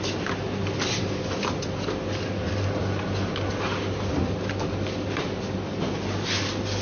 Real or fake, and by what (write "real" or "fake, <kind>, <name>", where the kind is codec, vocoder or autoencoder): real